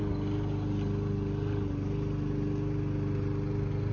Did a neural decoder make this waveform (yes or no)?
no